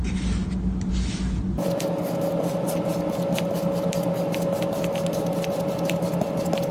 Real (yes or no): yes